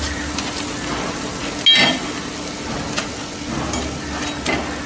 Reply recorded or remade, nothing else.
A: recorded